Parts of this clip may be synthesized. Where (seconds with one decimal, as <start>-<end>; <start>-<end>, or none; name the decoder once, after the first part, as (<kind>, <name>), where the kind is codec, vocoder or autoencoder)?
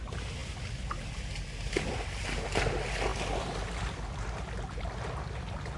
none